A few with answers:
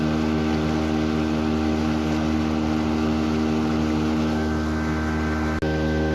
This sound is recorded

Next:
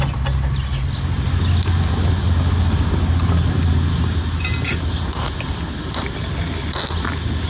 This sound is recorded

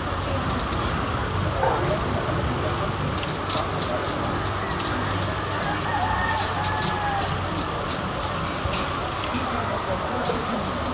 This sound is recorded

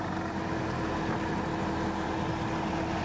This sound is recorded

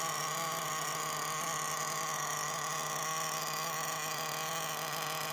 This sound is recorded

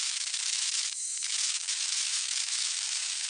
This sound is remade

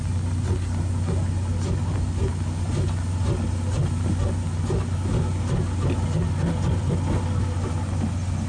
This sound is recorded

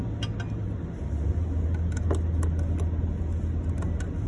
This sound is recorded